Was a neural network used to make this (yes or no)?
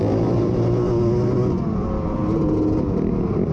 no